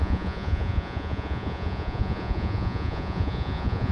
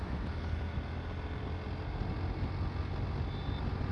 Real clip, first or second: second